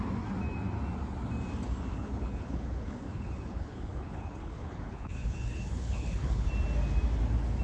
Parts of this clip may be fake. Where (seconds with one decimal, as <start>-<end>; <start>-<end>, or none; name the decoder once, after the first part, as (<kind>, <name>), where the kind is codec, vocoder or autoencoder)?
1.9-6.5 (codec, HILCodec)